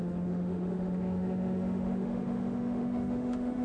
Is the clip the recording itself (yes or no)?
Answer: no